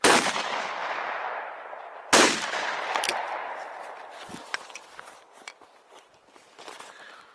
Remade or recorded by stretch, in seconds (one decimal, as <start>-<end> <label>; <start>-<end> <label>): 0.0-0.8 remade; 0.8-1.4 recorded; 1.4-3.1 remade; 3.1-4.0 recorded; 4.0-7.3 remade